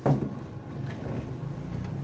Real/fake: real